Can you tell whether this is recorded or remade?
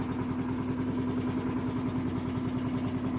recorded